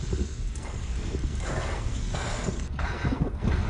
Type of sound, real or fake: fake